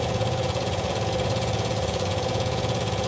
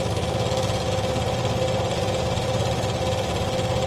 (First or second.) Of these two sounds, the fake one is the first